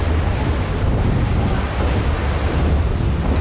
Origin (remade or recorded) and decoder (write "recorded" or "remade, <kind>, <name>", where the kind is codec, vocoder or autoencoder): recorded